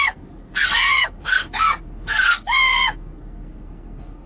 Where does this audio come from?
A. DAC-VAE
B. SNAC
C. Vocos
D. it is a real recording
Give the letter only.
B